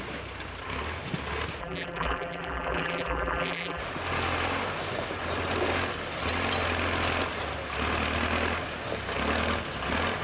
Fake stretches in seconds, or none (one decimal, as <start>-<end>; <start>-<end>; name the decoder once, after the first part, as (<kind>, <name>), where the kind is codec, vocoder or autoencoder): 1.6-3.8 (vocoder, BigVGAN v2)